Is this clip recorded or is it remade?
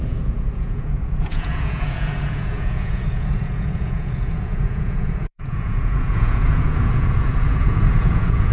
remade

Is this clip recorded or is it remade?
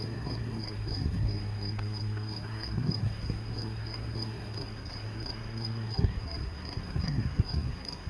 remade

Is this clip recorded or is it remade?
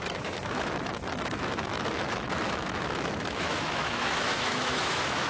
remade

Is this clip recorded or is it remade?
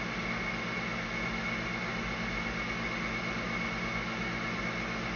recorded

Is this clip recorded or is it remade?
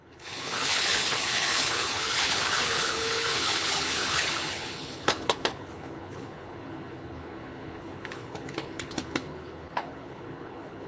remade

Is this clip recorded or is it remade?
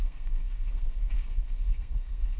remade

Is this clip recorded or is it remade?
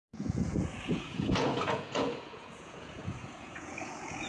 remade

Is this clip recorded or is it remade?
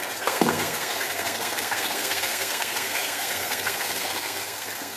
remade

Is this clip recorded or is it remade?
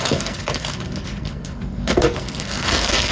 remade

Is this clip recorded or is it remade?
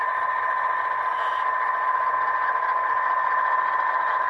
recorded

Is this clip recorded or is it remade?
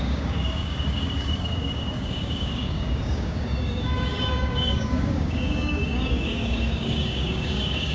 remade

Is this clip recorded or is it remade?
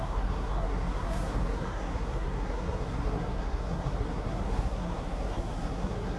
remade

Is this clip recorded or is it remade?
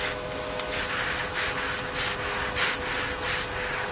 recorded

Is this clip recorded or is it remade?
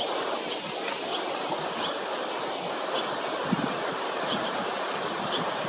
recorded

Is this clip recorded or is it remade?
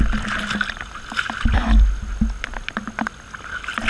recorded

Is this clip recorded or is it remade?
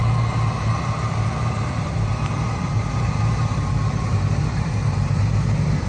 remade